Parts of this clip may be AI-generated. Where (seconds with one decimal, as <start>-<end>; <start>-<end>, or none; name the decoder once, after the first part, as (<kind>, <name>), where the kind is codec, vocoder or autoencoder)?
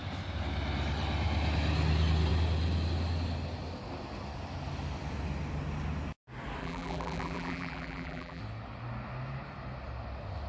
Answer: 6.6-8.4 (vocoder, BigVGAN v2)